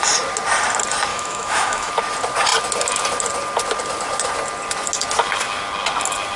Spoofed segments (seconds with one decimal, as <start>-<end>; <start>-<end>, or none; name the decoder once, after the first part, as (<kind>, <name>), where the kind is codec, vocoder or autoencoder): 1.1-1.9 (autoencoder, DAC-VAE)